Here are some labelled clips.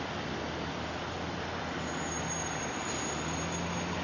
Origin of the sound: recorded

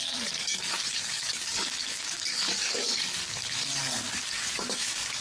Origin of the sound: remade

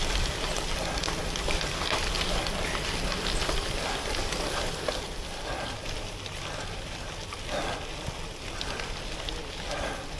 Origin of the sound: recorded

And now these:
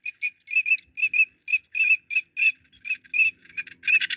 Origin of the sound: recorded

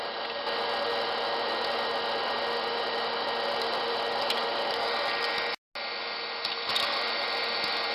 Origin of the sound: recorded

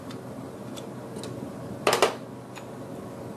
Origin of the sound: recorded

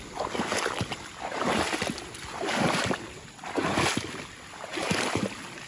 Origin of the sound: recorded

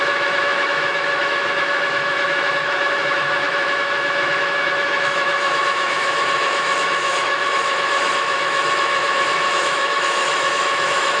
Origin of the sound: remade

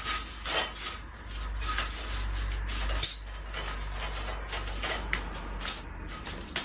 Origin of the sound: recorded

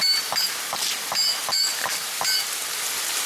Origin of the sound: remade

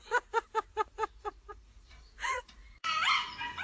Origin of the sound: remade